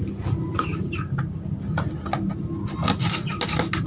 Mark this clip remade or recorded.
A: recorded